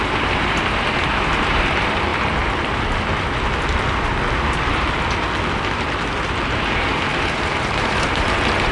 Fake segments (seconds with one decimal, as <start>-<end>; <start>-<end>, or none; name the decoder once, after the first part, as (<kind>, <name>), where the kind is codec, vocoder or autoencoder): 0.0-2.1 (vocoder, BigVGAN v2); 6.6-8.7